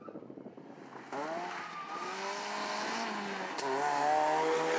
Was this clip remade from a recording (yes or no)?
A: no